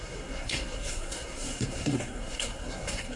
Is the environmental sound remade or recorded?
remade